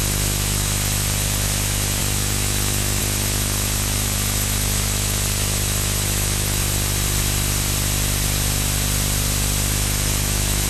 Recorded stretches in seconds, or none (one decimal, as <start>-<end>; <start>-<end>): 6.6-9.7